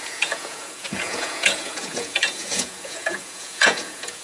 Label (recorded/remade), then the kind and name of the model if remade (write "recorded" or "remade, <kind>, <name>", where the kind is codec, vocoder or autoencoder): remade, vocoder, Vocos